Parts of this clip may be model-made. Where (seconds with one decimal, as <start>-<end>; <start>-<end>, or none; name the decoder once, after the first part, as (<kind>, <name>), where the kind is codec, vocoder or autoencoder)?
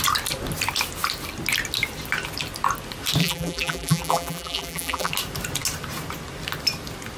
3.2-5.1 (vocoder, BigVGAN v2)